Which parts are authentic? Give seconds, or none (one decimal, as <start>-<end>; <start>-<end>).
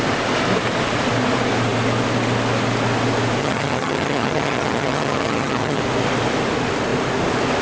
0.0-3.4; 5.8-7.6